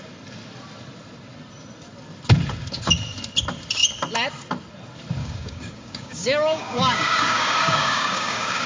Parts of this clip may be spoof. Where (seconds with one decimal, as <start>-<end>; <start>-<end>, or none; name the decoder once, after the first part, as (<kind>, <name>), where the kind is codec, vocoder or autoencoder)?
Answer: 5.2-8.7 (codec, DAC)